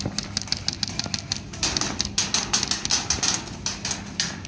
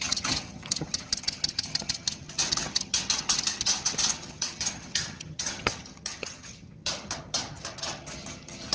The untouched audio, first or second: first